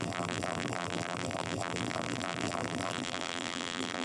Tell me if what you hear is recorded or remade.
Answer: remade